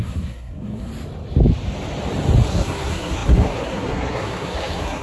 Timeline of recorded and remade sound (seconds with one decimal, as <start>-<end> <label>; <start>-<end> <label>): 0.0-0.9 remade; 0.9-2.5 recorded; 2.5-5.0 remade